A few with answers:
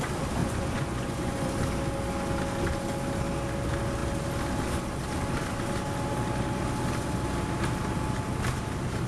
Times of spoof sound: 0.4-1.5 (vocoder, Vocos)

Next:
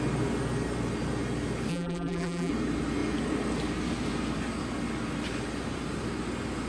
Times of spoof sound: 1.7-2.5 (vocoder, BigVGAN v2)

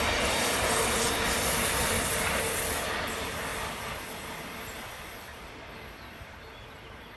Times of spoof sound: none

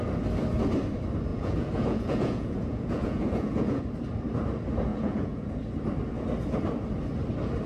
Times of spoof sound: 1.3-3.8 (vocoder, Vocos); 4.9-5.5

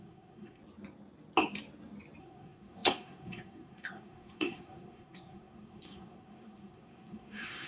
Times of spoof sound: 0.0-0.6 (codec, SNAC); 2.2-7.7

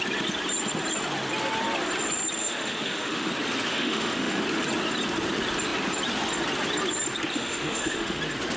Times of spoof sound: 2.4-3.3 (autoencoder, DAC-VAE); 3.7-4.4; 7.3-8.2

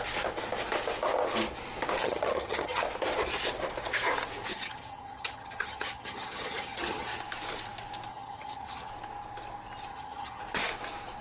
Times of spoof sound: 2.0-2.8 (vocoder, HiFi-GAN); 4.5-7.2; 8.1-8.9; 9.9-10.4